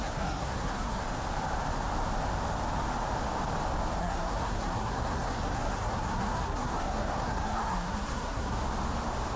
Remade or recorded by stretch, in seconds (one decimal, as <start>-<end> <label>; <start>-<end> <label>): 0.0-1.0 remade; 1.0-4.0 recorded; 4.0-8.6 remade; 8.6-9.4 recorded